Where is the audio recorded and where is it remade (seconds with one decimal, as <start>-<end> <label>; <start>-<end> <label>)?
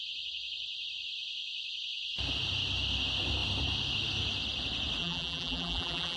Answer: 0.0-5.0 recorded; 5.0-6.2 remade